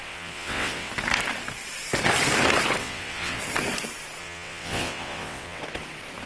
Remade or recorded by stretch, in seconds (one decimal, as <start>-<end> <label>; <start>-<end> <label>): 0.0-0.9 remade; 0.9-2.8 recorded; 2.8-3.4 remade; 3.4-4.2 recorded; 4.2-5.6 remade; 5.6-6.3 recorded